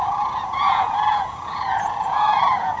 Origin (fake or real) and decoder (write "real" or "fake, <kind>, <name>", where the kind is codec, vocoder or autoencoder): fake, vocoder, Vocos